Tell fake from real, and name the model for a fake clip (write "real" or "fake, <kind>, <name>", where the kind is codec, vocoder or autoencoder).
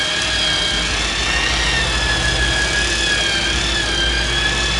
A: real